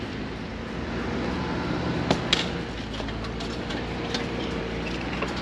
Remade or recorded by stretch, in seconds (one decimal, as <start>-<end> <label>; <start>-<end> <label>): 0.0-3.7 recorded; 3.7-4.6 remade; 4.6-5.4 recorded